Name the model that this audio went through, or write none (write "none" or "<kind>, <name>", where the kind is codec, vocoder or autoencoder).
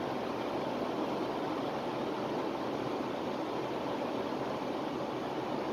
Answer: none